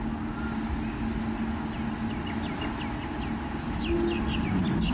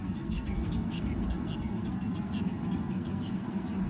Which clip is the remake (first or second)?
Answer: second